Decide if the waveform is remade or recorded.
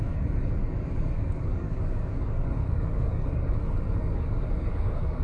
remade